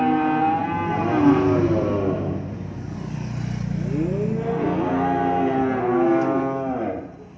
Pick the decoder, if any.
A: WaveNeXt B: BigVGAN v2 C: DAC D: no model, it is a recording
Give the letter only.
D